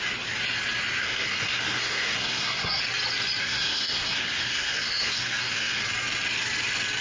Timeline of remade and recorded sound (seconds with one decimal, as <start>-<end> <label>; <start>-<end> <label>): 0.0-1.0 recorded; 1.0-2.8 remade; 2.8-3.4 recorded; 3.4-5.8 remade; 5.8-7.0 recorded